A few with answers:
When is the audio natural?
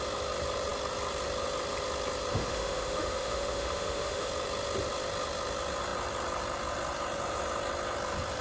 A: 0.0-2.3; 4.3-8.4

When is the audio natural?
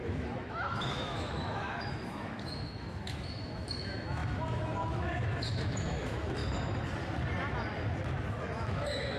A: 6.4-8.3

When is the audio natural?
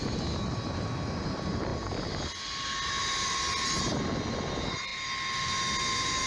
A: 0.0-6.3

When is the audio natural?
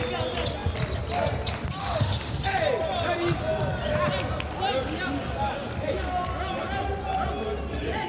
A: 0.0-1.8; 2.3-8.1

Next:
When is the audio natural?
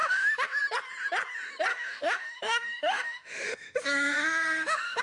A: 0.6-1.7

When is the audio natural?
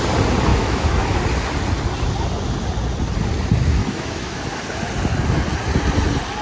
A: 0.0-0.5; 1.2-3.8; 4.4-6.4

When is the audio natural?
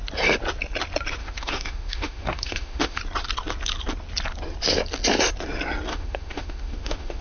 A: 0.0-1.2; 3.0-5.9